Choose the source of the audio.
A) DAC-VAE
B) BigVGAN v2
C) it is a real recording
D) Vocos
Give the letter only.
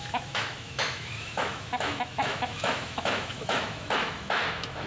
A